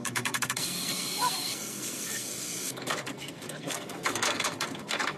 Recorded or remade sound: remade